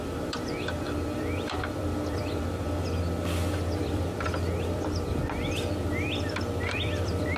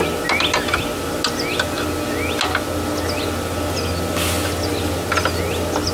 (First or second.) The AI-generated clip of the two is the first